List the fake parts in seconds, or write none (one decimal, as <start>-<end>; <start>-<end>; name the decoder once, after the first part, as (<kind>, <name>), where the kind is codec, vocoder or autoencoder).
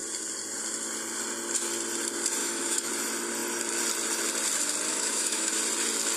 2.4-2.9 (autoencoder, DAC-VAE); 4.9-5.5